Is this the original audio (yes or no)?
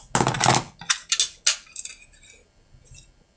yes